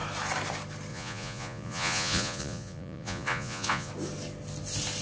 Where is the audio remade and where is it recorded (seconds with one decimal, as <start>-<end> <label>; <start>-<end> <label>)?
0.0-0.9 recorded; 0.9-3.9 remade; 3.9-5.0 recorded